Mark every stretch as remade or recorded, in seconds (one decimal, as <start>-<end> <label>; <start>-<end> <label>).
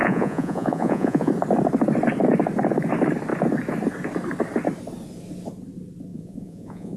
0.0-1.3 remade; 1.3-6.1 recorded; 6.1-7.0 remade